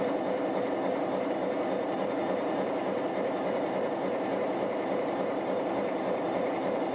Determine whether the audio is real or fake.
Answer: fake